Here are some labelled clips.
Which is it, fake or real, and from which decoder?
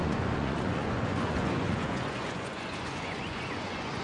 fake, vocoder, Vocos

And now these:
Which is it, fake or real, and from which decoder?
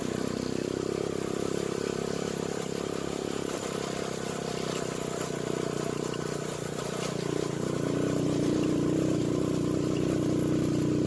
real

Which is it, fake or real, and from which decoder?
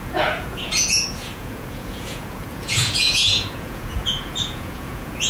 fake, vocoder, Vocos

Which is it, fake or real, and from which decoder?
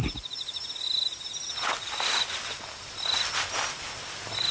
real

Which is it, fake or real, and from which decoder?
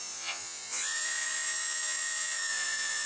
fake, vocoder, Vocos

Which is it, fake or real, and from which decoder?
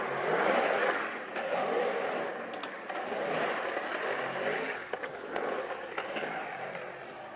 real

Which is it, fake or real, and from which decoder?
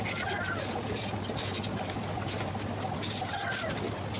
real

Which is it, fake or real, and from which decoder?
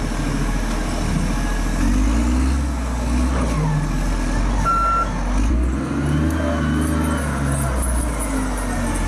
real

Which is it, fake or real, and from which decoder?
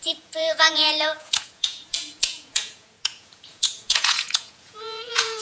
fake, vocoder, Vocos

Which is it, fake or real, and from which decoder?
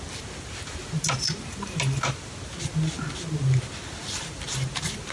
real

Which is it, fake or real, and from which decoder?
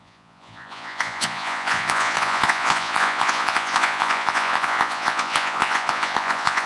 fake, vocoder, Vocos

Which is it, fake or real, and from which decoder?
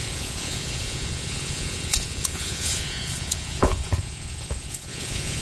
fake, vocoder, Vocos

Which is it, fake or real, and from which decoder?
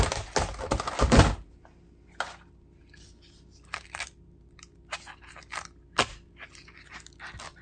real